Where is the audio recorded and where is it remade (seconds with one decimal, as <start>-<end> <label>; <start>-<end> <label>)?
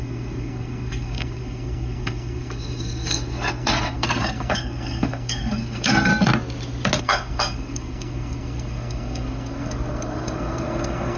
0.0-6.1 remade; 6.1-7.0 recorded; 7.0-11.2 remade